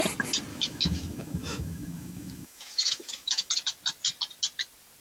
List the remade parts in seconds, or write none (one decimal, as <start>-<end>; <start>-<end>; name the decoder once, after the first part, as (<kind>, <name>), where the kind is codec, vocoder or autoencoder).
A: 0.5-3.5 (autoencoder, DAC-VAE)